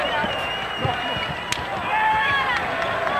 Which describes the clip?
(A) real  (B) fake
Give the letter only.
A